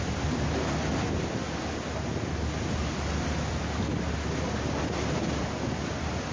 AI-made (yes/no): no